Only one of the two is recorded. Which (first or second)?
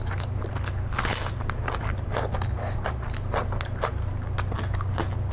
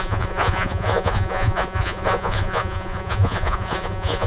first